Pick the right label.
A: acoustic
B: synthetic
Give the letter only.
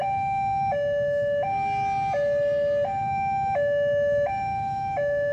A